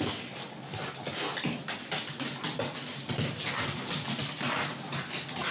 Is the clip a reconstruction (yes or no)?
no